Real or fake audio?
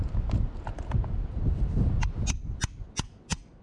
real